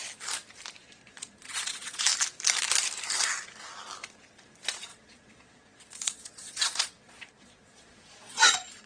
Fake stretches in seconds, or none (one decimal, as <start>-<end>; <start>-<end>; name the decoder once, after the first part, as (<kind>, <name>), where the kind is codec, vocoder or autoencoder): 0.8-2.0 (vocoder, Vocos); 4.9-8.9